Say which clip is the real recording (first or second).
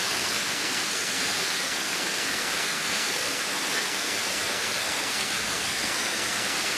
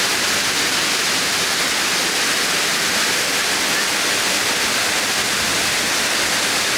second